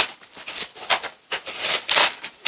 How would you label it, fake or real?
real